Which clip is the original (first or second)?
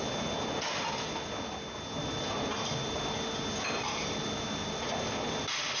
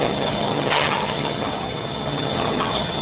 first